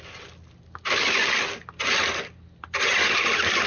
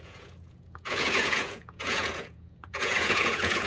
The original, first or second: first